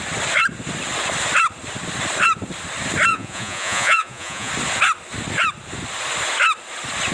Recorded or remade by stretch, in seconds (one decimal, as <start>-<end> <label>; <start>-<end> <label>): 0.0-3.1 recorded; 3.1-4.5 remade; 4.5-7.1 recorded